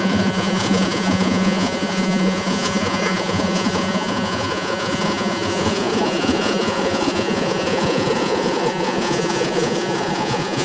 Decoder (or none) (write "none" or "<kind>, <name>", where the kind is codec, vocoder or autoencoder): vocoder, Vocos